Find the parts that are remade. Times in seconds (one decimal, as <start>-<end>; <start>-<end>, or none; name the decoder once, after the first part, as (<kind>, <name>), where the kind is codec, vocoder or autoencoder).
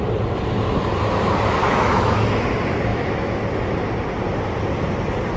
1.6-2.3 (autoencoder, DAC-VAE); 2.9-3.4